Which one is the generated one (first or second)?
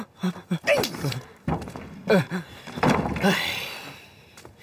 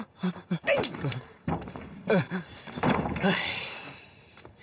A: second